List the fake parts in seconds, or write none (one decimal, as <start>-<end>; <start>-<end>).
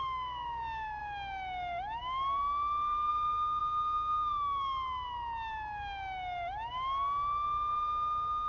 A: 0.0-1.0; 3.1-3.6